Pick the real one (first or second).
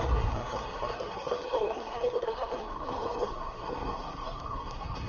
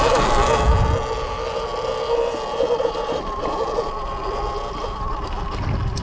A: second